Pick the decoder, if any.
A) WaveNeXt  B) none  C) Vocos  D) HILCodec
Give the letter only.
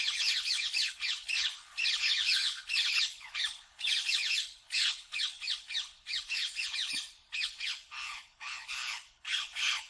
D